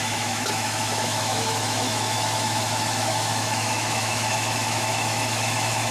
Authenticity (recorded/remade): remade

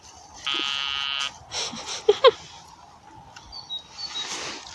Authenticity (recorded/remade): recorded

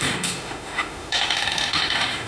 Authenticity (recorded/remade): remade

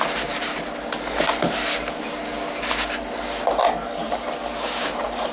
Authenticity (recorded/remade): recorded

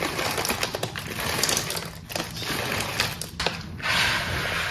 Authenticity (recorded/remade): recorded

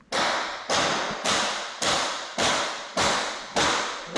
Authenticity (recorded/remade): recorded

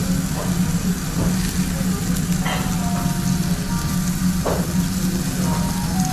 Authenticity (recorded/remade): recorded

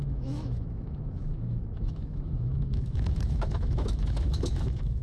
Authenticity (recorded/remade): remade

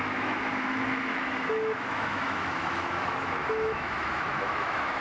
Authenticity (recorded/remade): remade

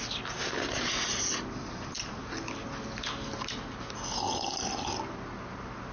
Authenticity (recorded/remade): recorded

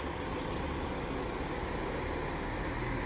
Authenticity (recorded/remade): recorded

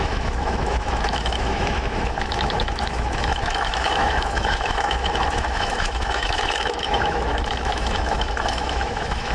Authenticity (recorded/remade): remade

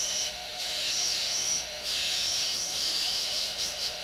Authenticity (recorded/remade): remade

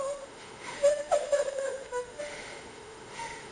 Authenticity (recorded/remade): remade